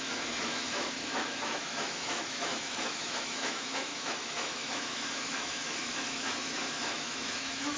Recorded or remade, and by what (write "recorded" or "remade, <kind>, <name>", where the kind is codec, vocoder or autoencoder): remade, autoencoder, DAC-VAE